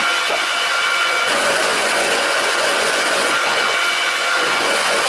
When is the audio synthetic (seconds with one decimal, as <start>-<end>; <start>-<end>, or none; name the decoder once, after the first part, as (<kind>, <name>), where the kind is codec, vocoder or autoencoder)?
0.0-5.1 (vocoder, Vocos)